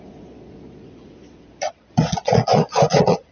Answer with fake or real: fake